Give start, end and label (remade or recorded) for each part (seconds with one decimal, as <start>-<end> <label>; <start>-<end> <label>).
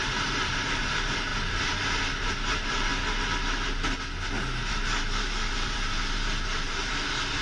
0.0-2.9 remade; 2.9-4.7 recorded; 4.7-7.4 remade